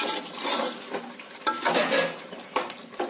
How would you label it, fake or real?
real